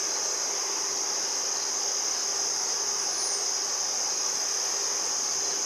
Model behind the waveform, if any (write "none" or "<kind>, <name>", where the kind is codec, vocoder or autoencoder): none